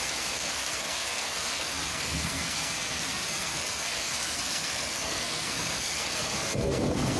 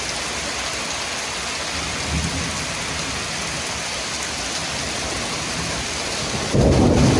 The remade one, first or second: first